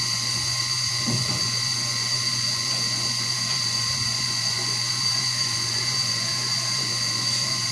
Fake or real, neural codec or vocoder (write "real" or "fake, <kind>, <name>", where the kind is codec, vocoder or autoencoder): fake, vocoder, Vocos